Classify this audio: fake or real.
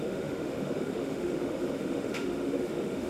fake